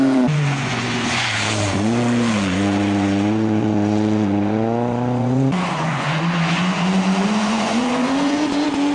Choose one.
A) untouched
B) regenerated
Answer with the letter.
B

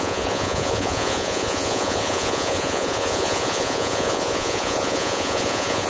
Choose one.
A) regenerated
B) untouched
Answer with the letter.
A